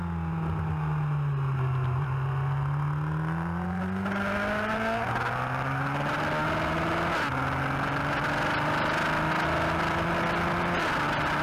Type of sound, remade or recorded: recorded